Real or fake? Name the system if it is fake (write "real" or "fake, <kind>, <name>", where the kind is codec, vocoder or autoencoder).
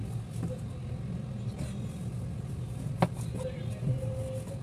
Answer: real